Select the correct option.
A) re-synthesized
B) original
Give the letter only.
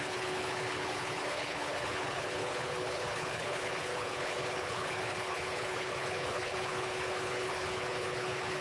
A